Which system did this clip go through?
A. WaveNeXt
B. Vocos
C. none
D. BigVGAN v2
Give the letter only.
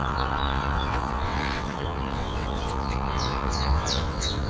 A